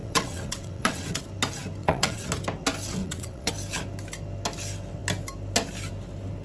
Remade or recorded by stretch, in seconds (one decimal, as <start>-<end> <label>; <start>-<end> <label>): 0.0-1.2 remade; 1.2-1.8 recorded; 1.8-2.3 remade; 2.3-3.0 recorded; 3.0-3.5 remade; 3.5-6.4 recorded